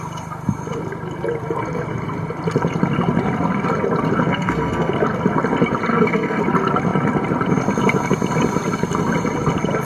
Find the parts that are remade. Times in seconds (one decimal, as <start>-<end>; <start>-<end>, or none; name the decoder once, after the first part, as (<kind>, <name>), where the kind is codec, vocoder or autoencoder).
4.3-4.9 (codec, SNAC); 5.9-6.4